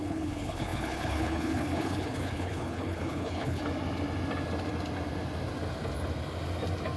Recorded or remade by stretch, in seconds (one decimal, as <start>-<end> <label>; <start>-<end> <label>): 0.0-3.6 remade; 3.6-7.0 recorded